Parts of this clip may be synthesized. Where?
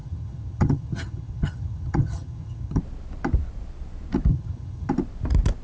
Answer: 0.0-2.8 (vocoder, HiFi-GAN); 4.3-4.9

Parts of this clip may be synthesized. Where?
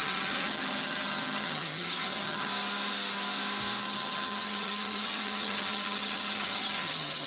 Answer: 0.0-2.5 (vocoder, HiFi-GAN); 3.8-7.3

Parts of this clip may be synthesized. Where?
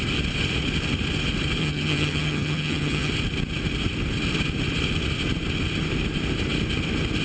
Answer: 1.6-3.1 (vocoder, HiFi-GAN)